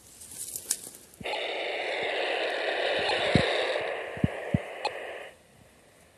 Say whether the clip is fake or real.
real